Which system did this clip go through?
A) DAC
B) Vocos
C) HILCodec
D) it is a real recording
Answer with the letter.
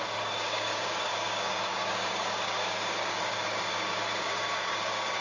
A